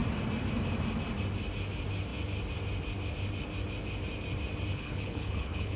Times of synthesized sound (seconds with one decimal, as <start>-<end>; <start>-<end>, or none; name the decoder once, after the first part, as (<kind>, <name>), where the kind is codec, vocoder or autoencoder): 4.7-5.8 (codec, HILCodec)